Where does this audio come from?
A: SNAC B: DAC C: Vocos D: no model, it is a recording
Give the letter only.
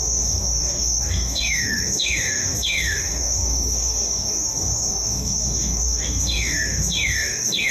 B